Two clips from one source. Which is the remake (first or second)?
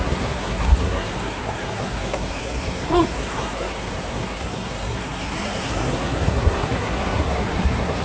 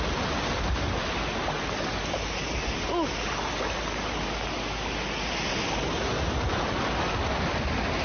first